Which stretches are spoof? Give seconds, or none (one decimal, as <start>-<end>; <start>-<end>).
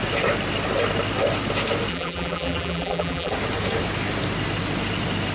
1.9-3.3